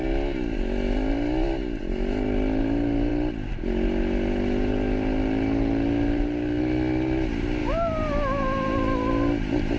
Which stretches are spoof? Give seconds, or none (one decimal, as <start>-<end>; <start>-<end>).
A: none